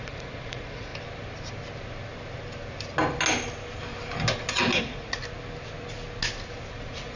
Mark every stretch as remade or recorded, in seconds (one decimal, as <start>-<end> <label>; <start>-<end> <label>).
0.0-0.9 remade; 0.9-4.8 recorded; 4.8-5.2 remade; 5.2-6.7 recorded; 6.7-7.2 remade